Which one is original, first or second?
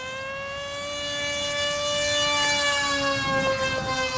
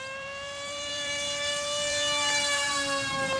first